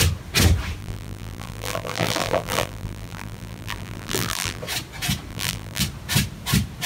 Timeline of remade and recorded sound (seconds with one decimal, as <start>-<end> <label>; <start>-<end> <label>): 0.0-0.8 recorded; 0.8-4.6 remade; 4.6-5.3 recorded; 5.3-5.8 remade; 5.8-6.9 recorded